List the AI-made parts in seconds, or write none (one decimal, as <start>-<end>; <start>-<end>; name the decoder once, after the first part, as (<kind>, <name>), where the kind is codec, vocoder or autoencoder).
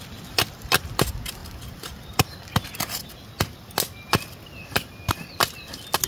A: none